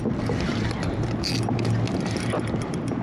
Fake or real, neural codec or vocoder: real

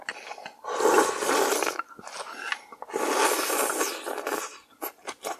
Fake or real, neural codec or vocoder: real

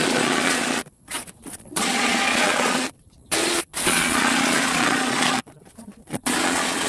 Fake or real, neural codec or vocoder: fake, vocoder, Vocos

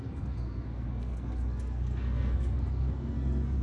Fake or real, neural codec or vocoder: fake, codec, SNAC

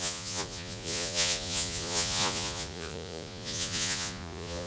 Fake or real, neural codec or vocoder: fake, vocoder, Vocos